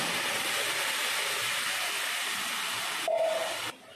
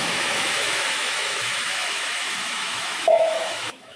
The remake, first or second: second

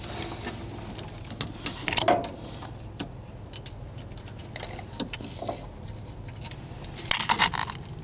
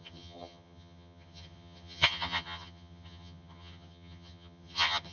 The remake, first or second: second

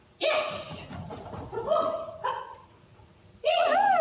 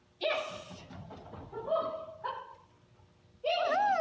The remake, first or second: first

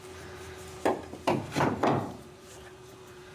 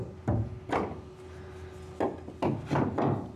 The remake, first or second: first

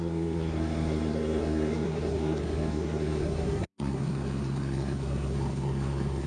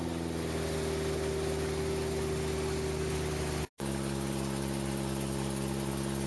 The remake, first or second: first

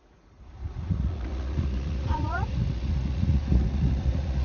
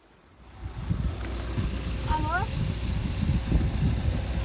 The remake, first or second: first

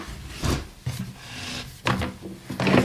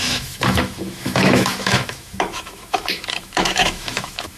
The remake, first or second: second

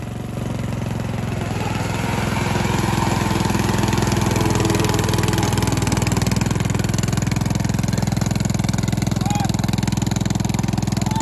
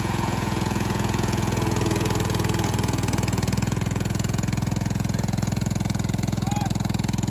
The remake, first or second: second